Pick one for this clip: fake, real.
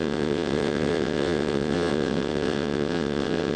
fake